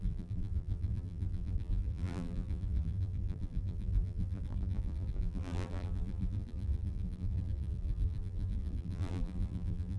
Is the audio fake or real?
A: fake